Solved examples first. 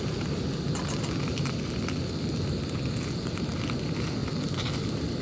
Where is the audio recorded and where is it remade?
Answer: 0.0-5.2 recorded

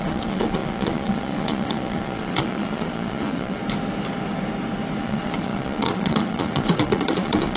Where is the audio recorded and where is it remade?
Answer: 0.0-3.6 remade; 3.6-5.0 recorded; 5.0-7.6 remade